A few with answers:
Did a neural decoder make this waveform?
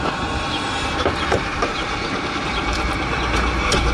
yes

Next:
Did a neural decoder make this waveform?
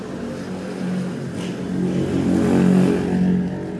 no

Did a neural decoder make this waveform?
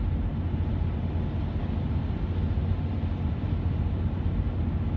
no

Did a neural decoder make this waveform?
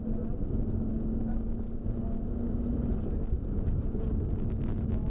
no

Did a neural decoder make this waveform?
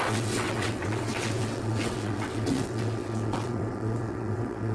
yes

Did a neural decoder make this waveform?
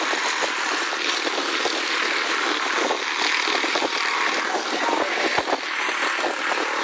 no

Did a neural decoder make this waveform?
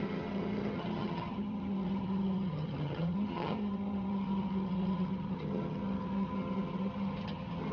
yes